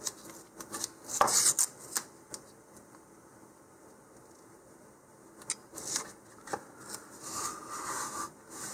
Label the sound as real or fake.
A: real